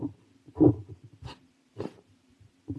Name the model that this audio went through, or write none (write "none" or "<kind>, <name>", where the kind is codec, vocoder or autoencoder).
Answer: none